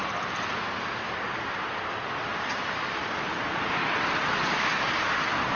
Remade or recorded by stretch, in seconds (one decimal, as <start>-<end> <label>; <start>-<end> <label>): 0.0-5.6 recorded